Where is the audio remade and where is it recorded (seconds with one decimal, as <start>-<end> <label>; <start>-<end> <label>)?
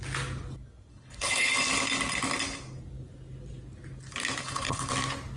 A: 0.0-0.9 recorded; 0.9-1.5 remade; 1.5-4.4 recorded; 4.4-4.9 remade; 4.9-5.4 recorded